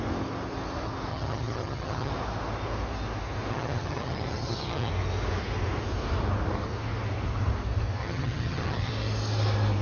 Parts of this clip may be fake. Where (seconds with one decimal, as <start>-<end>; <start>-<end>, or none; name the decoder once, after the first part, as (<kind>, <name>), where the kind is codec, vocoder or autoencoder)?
1.1-2.1 (vocoder, HiFi-GAN); 3.5-4.9; 8.0-8.9